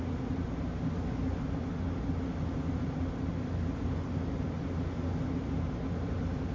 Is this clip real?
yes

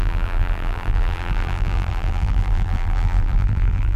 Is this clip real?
no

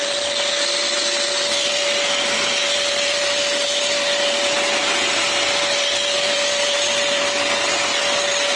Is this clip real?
yes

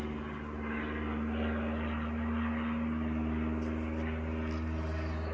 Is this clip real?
yes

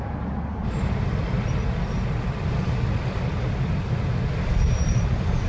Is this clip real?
no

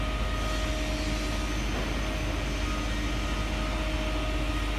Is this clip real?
yes